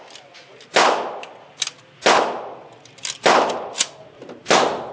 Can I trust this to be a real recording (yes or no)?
yes